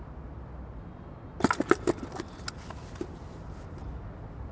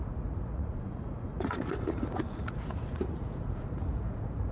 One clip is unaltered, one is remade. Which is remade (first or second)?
second